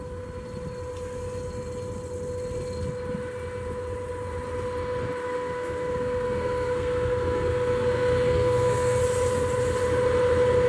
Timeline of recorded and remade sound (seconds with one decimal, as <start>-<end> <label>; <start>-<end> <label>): 0.0-5.2 recorded; 5.2-9.0 remade; 9.0-10.7 recorded